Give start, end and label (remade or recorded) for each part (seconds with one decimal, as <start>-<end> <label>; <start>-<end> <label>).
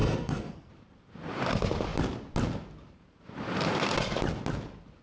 0.0-0.7 remade; 0.7-5.0 recorded